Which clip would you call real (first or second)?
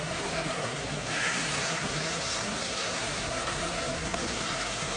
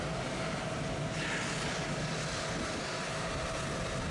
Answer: second